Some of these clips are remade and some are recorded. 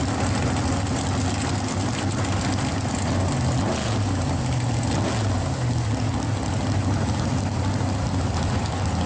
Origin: recorded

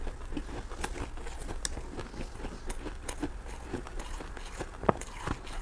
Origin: recorded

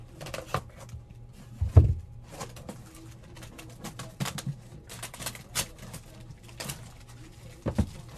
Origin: recorded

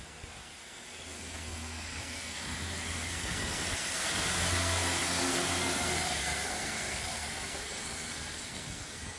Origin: remade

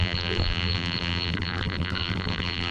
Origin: remade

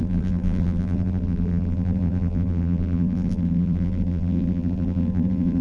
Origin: remade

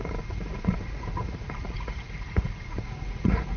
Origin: remade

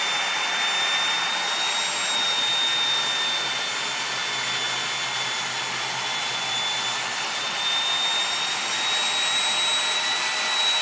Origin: recorded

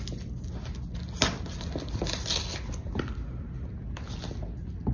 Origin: recorded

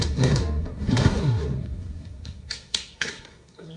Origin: remade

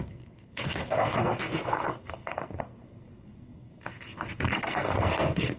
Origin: remade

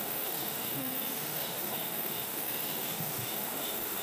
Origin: remade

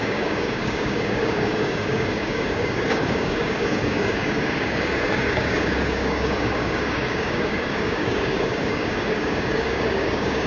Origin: remade